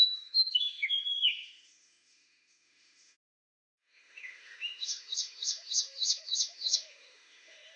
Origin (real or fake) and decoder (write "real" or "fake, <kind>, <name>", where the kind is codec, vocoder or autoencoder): fake, autoencoder, DAC-VAE